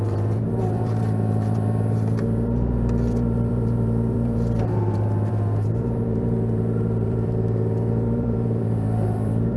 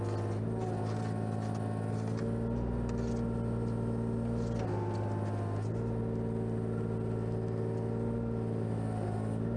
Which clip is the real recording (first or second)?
second